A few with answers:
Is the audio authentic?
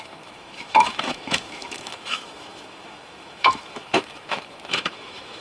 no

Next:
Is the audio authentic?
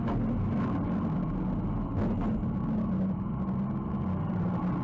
yes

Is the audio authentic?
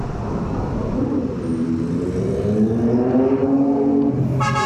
yes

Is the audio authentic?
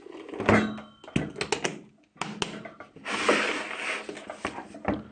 yes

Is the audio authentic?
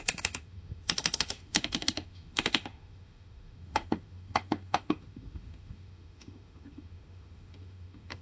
no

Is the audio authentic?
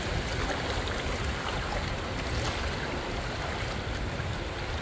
yes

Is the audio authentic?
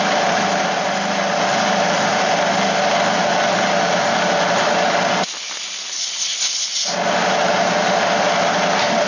yes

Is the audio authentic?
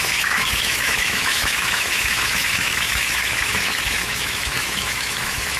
no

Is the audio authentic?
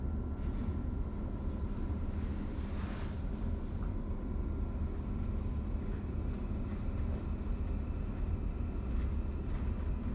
yes